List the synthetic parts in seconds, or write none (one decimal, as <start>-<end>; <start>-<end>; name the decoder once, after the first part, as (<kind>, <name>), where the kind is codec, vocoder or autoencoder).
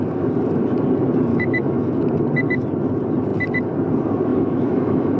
1.3-2.0 (autoencoder, DAC-VAE); 4.3-5.2